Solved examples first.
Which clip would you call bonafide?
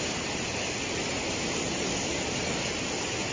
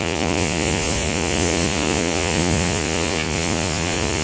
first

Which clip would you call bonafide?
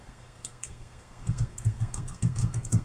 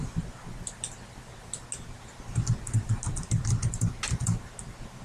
second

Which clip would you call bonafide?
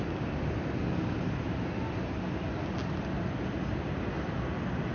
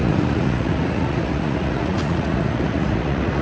first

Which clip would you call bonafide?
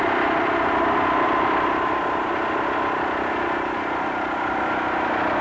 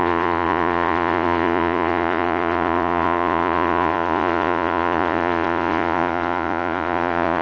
first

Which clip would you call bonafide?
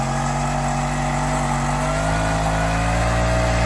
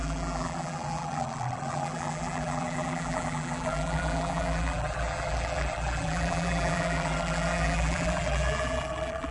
first